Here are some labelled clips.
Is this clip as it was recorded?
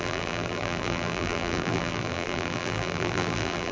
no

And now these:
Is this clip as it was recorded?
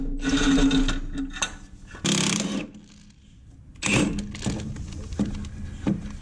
yes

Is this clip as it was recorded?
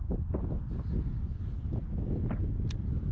yes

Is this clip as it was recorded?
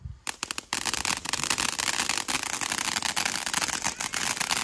yes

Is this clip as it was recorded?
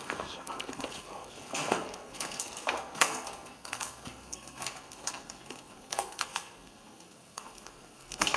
no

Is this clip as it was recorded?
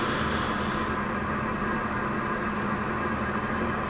yes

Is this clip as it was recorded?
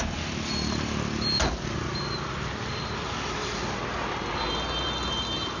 yes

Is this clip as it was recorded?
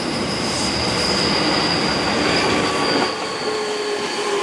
yes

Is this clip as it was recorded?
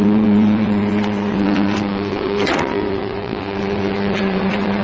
no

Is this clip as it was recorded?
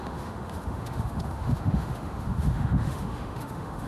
no